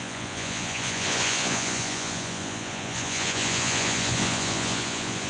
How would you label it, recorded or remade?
remade